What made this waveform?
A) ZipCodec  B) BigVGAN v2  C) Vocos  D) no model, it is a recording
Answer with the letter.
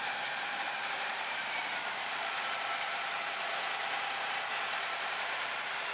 B